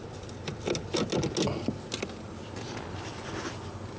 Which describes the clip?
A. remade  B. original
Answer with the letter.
B